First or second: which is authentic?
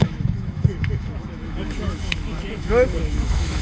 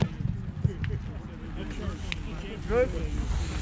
second